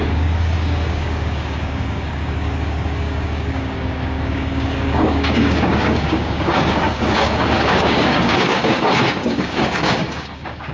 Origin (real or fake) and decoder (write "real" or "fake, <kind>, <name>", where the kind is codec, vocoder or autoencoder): fake, codec, DAC